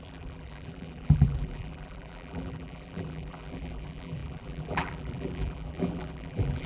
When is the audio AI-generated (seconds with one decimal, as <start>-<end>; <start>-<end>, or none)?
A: 0.0-6.7